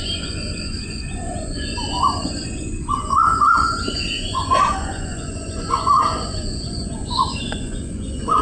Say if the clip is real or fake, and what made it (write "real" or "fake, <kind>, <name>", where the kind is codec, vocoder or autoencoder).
fake, vocoder, Vocos